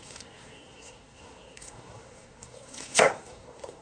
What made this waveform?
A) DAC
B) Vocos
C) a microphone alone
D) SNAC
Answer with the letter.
D